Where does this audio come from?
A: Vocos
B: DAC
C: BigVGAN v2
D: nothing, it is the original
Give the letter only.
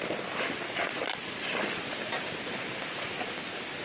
D